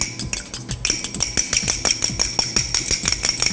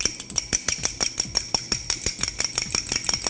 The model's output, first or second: second